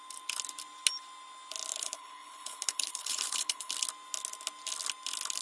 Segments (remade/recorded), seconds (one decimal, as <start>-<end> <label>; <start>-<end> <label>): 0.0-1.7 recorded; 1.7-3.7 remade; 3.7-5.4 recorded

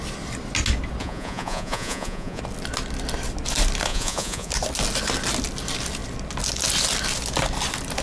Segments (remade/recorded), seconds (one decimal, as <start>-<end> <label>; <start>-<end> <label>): 0.0-1.0 recorded; 1.0-2.4 remade; 2.4-3.9 recorded; 3.9-4.5 remade; 4.5-8.0 recorded

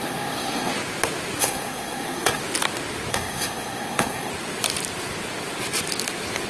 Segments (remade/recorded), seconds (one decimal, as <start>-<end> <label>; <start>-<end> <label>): 0.0-0.7 remade; 0.7-1.4 recorded; 1.4-2.4 remade; 2.4-3.1 recorded; 3.1-4.3 remade; 4.3-6.5 recorded

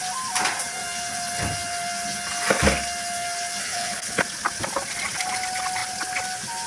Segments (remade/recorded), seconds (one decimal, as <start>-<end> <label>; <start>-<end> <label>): 0.0-3.6 recorded; 3.6-4.2 remade; 4.2-6.7 recorded

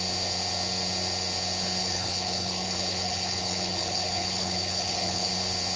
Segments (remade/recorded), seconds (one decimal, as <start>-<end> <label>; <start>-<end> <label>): 0.0-1.8 recorded; 1.8-5.3 remade; 5.3-5.8 recorded